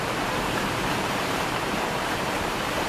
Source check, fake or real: fake